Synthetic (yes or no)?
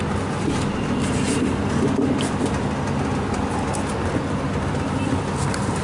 no